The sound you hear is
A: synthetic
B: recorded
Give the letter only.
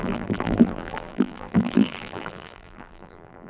A